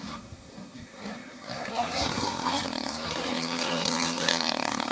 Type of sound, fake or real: fake